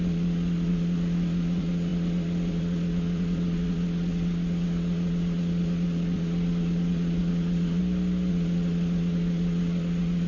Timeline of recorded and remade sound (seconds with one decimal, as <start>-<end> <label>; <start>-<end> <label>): 0.0-7.8 remade; 7.8-8.3 recorded; 8.3-10.3 remade